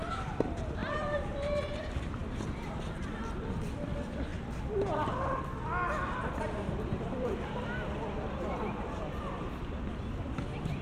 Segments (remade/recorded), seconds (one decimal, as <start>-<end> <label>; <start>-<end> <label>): 0.0-2.2 remade; 2.2-3.0 recorded; 3.0-4.3 remade; 4.3-6.4 recorded; 6.4-10.8 remade